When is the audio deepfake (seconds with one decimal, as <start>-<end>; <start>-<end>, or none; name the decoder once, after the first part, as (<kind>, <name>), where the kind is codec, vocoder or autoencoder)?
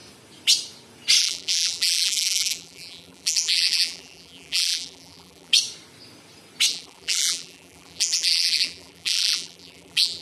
1.2-5.5 (vocoder, BigVGAN v2); 6.7-10.2